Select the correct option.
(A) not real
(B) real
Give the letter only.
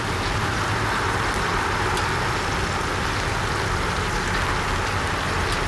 B